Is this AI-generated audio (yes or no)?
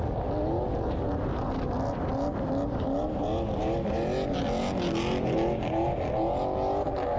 no